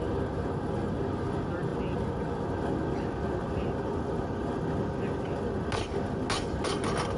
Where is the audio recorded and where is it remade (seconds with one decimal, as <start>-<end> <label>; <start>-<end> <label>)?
0.0-7.2 recorded